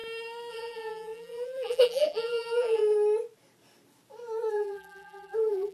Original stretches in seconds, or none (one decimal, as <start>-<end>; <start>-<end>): 0.0-0.5; 2.8-4.5